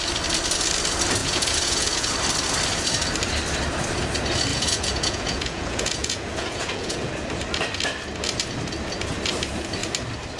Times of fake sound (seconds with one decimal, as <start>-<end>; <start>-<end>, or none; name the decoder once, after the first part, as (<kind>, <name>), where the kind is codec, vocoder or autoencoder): 1.2-2.1 (vocoder, Vocos); 4.5-7.1

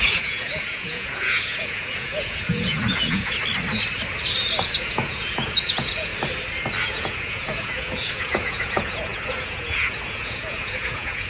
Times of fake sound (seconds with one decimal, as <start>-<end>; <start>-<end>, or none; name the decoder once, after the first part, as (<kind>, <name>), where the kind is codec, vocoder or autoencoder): 0.0-3.4 (vocoder, Vocos); 4.6-6.1; 6.8-11.3

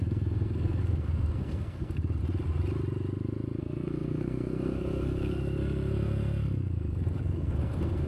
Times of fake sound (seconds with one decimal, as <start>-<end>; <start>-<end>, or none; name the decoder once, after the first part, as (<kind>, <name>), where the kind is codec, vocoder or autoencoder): 0.0-2.2 (codec, SNAC); 3.6-8.1

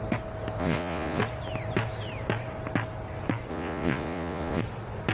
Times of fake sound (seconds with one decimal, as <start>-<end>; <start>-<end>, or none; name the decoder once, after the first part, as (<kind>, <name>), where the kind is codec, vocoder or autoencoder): 0.6-1.2 (vocoder, Vocos); 3.5-4.6

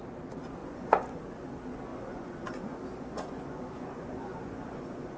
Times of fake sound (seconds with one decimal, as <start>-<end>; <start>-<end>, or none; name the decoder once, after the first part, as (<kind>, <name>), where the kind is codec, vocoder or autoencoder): 0.6-1.2 (vocoder, Vocos); 1.9-5.2

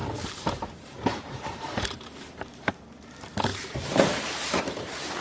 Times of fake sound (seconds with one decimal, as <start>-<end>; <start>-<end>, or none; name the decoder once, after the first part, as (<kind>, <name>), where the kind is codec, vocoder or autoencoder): 0.0-5.2 (vocoder, BigVGAN v2)

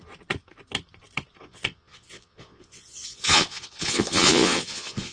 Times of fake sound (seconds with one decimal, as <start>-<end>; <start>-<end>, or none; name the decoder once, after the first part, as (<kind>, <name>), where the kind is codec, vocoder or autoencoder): 1.4-5.1 (vocoder, Vocos)